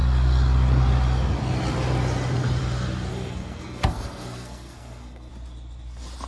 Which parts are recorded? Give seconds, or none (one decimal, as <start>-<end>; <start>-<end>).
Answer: 0.0-3.1; 5.3-6.3